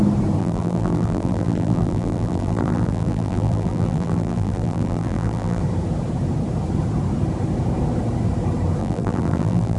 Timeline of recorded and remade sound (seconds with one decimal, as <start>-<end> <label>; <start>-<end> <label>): 0.0-0.4 recorded; 0.4-5.6 remade; 5.6-8.8 recorded; 8.8-9.8 remade